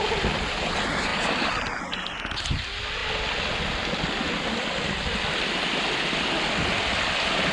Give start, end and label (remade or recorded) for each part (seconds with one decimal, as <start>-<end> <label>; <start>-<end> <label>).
0.0-7.5 recorded